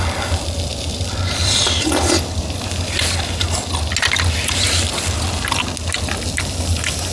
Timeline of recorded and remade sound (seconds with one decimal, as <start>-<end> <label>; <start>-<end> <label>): 0.0-0.7 recorded; 0.7-2.7 remade; 2.7-7.1 recorded

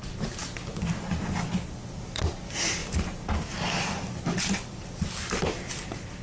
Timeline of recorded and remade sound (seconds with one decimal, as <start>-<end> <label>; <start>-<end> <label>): 0.0-6.2 recorded